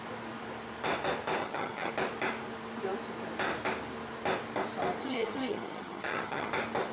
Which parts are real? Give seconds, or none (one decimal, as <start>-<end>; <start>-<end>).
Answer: 0.0-1.4; 1.9-5.0; 6.5-6.9